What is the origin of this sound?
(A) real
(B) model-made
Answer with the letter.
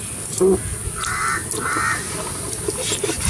A